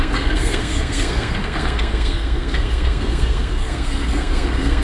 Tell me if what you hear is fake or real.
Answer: fake